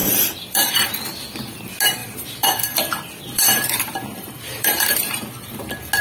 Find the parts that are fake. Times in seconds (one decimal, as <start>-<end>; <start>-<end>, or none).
0.0-0.7; 2.0-5.6